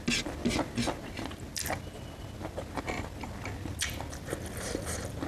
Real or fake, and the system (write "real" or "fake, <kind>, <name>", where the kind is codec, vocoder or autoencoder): real